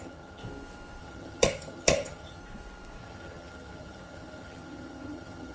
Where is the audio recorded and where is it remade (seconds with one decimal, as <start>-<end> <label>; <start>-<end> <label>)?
0.0-0.4 remade; 0.4-1.0 recorded; 1.0-2.4 remade; 2.4-3.0 recorded; 3.0-5.5 remade